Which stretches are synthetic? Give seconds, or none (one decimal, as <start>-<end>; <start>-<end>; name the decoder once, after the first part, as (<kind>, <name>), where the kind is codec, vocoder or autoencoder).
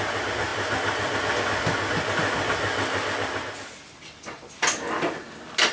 none